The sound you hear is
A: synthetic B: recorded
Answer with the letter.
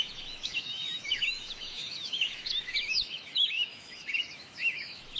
A